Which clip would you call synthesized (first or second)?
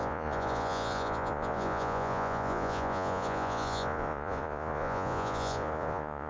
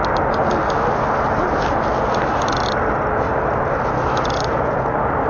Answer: first